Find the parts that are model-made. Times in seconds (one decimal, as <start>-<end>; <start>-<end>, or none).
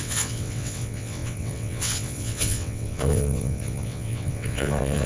0.0-5.1